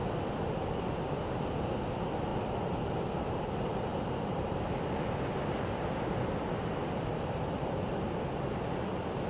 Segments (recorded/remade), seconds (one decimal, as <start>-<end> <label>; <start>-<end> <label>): 0.0-9.3 recorded